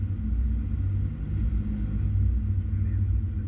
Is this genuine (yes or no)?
yes